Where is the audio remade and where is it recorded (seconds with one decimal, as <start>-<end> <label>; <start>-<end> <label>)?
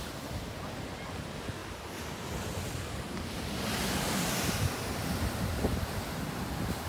0.0-6.9 recorded